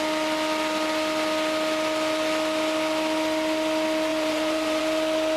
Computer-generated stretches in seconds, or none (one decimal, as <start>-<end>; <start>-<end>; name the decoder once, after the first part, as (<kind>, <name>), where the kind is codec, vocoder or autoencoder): 4.1-4.8 (vocoder, BigVGAN v2)